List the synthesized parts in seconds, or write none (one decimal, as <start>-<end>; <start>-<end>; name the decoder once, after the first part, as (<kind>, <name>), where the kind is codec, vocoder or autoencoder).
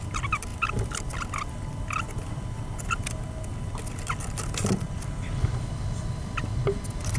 none